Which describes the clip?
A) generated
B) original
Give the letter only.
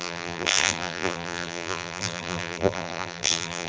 A